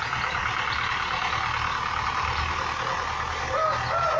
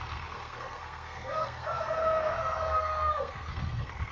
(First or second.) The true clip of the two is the first